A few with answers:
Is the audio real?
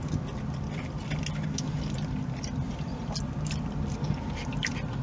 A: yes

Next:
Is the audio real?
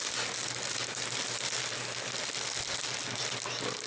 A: yes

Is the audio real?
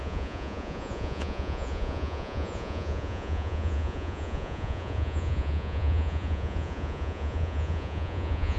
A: no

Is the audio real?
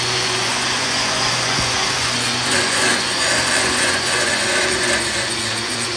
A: no